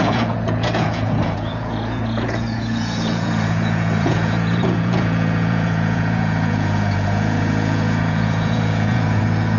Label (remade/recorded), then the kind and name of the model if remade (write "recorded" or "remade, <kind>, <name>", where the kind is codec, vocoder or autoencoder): remade, vocoder, Vocos